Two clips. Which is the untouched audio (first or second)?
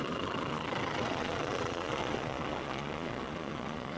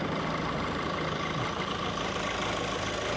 second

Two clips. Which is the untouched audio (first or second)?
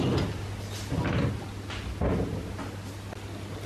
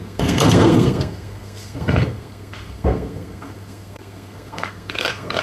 first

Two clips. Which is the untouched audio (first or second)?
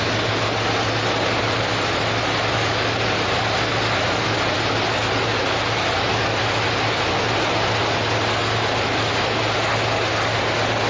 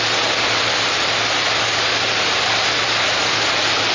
first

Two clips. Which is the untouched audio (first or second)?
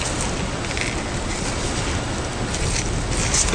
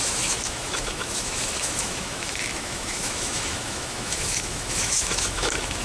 first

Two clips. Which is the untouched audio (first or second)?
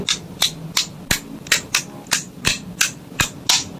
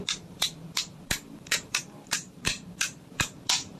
first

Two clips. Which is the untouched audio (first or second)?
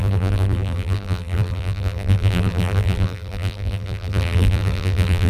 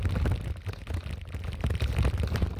second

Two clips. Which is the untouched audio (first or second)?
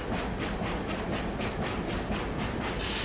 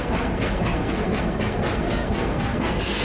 first